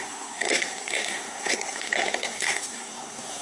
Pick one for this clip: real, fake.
fake